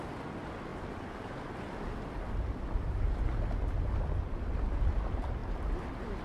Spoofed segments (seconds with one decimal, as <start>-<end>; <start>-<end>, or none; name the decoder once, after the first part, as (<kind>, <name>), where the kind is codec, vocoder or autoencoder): none